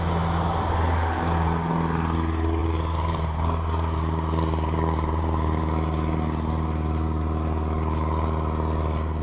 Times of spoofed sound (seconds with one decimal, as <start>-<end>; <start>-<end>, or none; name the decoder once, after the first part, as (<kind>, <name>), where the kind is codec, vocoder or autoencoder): 2.6-5.6 (vocoder, BigVGAN v2)